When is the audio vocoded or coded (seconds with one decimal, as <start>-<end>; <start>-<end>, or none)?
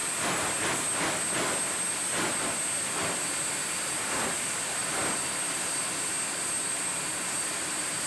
none